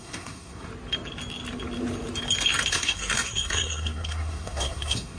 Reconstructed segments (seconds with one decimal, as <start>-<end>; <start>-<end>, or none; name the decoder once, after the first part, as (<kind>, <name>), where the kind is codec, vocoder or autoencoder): 0.0-0.7 (codec, SNAC); 2.7-5.2